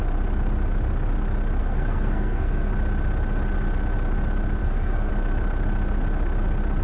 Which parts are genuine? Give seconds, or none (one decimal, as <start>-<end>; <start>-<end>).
0.0-1.6; 2.7-4.6; 5.1-6.8